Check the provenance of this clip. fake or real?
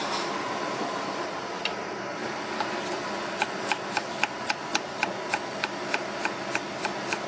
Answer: real